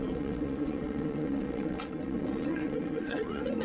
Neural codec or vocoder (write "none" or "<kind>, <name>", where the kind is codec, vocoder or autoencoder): vocoder, WaveNeXt